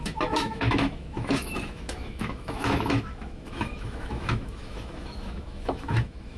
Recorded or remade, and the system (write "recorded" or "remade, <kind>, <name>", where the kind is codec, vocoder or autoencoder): remade, autoencoder, DAC-VAE